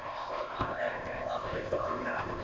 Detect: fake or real fake